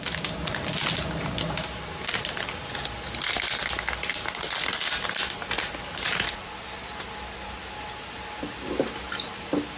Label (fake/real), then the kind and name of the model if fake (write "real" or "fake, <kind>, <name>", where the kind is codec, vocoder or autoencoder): real